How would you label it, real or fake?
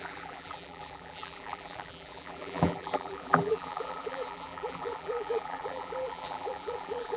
fake